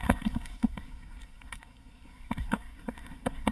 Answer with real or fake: fake